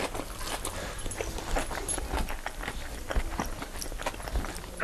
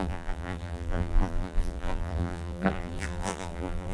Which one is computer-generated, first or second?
second